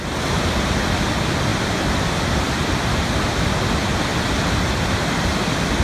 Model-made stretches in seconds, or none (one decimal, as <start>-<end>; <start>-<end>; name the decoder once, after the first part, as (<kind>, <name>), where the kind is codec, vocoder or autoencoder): none